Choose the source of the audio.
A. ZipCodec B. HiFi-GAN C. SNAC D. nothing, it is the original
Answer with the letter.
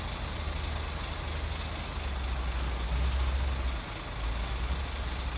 D